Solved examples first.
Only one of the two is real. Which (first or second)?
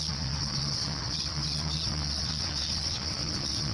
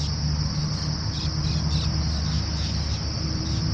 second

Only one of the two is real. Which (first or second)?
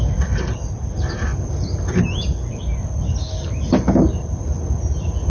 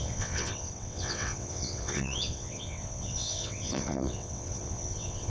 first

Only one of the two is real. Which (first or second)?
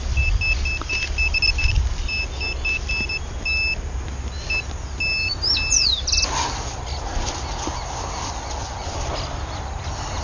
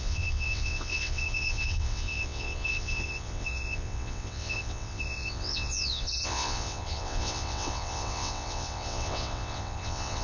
first